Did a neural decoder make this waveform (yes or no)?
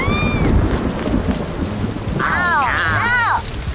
no